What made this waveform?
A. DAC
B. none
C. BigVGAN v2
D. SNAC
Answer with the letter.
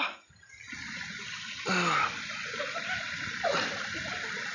B